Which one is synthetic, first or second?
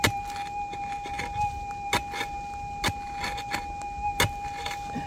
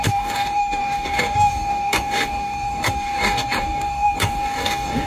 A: second